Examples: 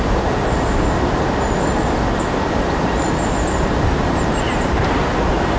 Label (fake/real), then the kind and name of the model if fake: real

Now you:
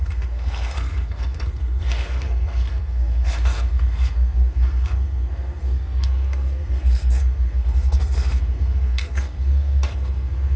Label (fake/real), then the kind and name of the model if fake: fake, codec, SNAC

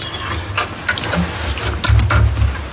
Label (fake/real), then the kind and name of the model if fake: real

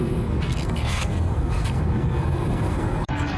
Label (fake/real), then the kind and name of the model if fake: fake, codec, SNAC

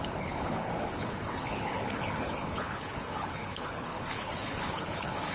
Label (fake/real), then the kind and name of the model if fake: fake, codec, HILCodec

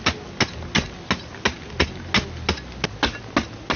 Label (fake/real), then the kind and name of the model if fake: real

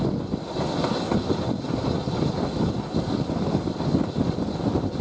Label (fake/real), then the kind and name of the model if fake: real